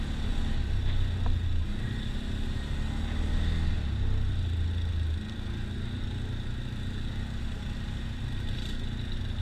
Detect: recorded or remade recorded